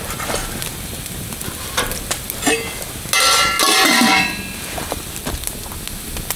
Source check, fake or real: real